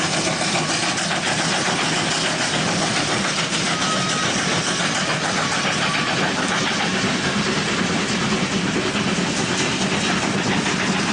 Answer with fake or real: real